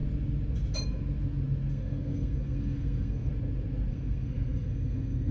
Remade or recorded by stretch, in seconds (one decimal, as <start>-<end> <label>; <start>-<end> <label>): 0.0-1.7 recorded; 1.7-3.3 remade; 3.3-3.9 recorded; 3.9-5.3 remade